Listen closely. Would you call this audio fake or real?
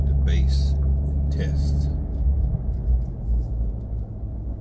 real